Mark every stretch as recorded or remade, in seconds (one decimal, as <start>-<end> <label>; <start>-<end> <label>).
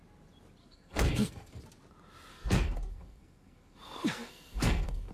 0.0-0.6 recorded; 0.6-1.6 remade; 1.6-2.3 recorded; 2.3-5.1 remade